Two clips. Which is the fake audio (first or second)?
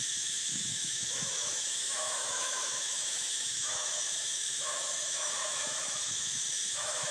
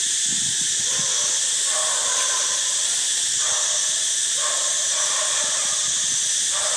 first